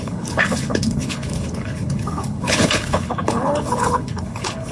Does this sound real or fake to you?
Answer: fake